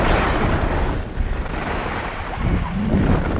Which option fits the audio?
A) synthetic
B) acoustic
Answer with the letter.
B